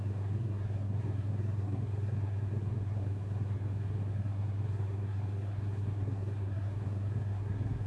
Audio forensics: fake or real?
fake